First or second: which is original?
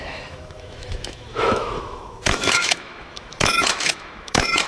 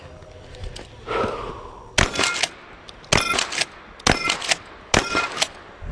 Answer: second